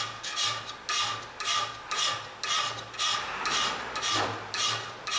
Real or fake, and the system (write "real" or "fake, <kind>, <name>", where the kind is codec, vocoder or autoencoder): real